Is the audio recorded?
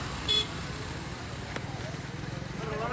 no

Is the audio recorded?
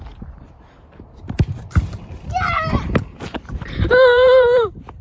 no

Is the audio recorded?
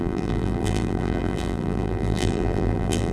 no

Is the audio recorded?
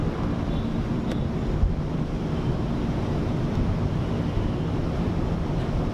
yes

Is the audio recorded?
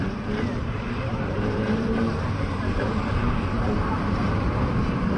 no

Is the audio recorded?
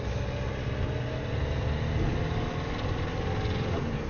yes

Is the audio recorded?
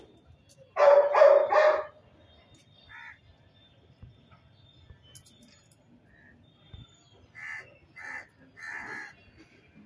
yes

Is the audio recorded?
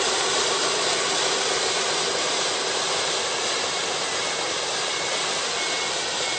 yes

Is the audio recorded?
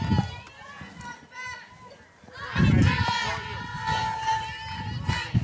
yes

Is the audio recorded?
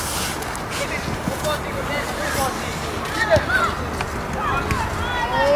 yes